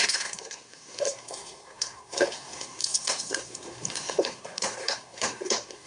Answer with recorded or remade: remade